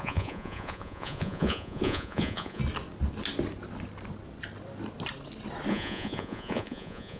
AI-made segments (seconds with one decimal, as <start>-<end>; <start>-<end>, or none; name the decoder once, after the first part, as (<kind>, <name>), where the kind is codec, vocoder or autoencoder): 0.0-2.6 (vocoder, Vocos); 5.7-7.2